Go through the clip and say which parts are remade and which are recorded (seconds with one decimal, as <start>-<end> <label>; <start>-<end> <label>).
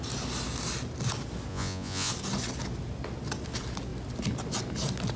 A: 0.0-1.5 recorded; 1.5-2.1 remade; 2.1-5.2 recorded